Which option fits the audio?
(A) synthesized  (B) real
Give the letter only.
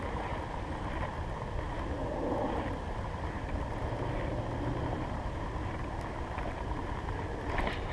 A